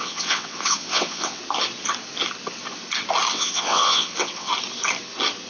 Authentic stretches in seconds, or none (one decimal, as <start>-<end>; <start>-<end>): 1.4-3.3; 4.5-5.5